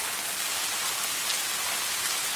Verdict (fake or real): real